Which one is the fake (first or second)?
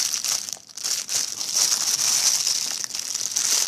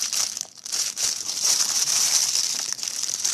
second